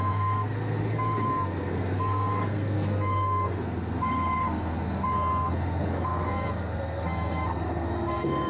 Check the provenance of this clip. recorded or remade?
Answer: remade